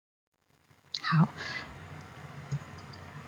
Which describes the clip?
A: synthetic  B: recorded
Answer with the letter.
A